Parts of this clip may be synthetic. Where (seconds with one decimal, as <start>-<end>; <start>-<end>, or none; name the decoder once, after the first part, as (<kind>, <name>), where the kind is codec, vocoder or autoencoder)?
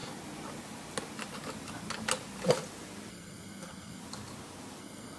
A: 3.1-4.0 (codec, SNAC); 4.8-5.2